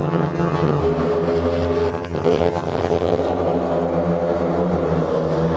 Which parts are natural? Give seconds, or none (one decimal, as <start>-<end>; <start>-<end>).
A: 0.8-1.9; 3.2-5.6